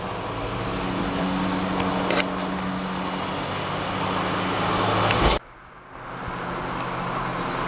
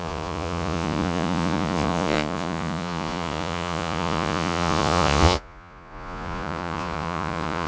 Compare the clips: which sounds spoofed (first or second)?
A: second